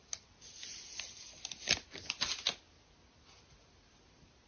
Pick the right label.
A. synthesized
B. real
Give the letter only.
B